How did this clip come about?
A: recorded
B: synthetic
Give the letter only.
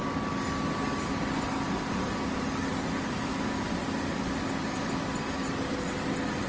A